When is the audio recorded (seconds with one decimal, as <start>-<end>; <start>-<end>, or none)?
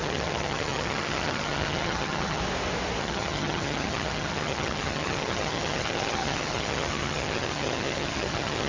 2.4-3.0